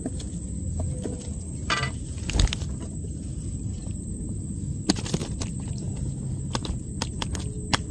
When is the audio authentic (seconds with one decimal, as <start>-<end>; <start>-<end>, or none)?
0.0-7.9